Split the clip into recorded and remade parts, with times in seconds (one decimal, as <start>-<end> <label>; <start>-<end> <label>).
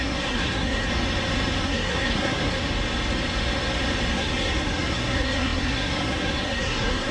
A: 0.0-0.9 remade; 0.9-1.6 recorded; 1.6-2.6 remade; 2.6-4.1 recorded; 4.1-7.1 remade